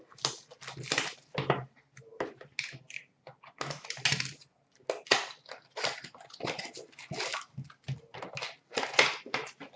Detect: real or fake real